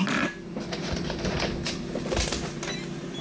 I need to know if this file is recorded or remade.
recorded